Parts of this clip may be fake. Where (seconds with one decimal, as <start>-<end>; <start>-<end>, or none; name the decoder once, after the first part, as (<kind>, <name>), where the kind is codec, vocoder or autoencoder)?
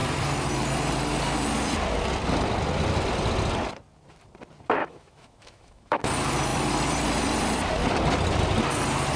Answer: 4.8-6.1 (autoencoder, DAC-VAE)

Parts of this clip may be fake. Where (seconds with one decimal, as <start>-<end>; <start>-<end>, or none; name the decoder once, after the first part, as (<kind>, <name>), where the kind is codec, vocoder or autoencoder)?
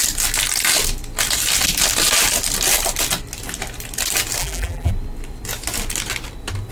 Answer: 4.4-4.9 (vocoder, BigVGAN v2)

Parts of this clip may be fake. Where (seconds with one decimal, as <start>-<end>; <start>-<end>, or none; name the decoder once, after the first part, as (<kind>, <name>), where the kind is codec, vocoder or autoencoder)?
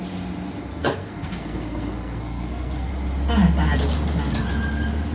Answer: 0.7-2.9 (codec, SNAC)